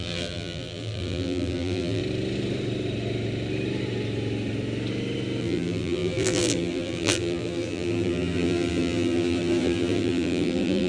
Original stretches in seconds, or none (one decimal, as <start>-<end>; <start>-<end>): 2.0-5.4